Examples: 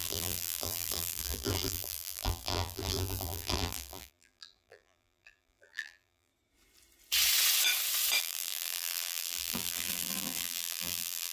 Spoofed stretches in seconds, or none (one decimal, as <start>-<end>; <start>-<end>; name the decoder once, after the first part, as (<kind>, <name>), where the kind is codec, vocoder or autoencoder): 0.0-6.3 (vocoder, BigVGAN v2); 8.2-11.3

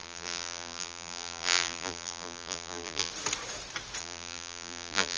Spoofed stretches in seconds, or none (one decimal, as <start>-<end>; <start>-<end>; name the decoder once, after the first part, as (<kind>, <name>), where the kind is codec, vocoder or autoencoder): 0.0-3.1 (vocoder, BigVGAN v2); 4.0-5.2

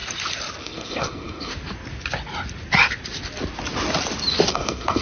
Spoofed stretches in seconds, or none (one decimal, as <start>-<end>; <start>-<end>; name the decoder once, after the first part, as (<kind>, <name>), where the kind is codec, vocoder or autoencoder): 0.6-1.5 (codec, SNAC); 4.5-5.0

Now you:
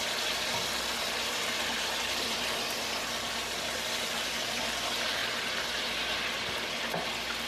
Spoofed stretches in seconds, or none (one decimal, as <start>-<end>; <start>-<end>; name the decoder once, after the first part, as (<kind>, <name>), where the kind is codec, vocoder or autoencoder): 0.0-5.2 (vocoder, BigVGAN v2); 5.8-7.5